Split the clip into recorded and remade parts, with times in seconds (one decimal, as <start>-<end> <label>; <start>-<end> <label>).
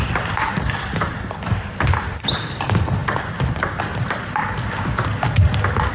0.0-3.0 remade; 3.0-3.8 recorded; 3.8-4.4 remade; 4.4-5.9 recorded